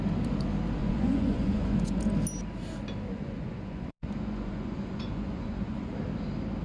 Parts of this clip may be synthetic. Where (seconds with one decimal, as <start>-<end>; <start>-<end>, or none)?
0.8-2.0; 3.1-5.9